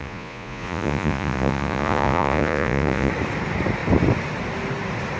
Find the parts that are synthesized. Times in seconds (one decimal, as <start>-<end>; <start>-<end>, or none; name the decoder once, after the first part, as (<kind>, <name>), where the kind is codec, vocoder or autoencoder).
0.0-3.1 (vocoder, Vocos)